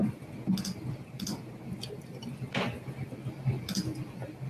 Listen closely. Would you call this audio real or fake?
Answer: real